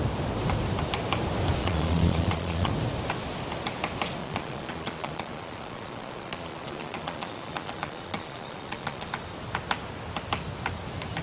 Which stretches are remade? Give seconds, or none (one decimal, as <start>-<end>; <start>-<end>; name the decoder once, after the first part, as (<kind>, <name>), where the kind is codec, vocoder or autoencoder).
1.6-2.7 (vocoder, Vocos); 4.2-9.1